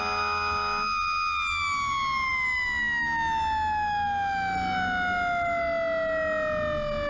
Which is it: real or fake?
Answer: real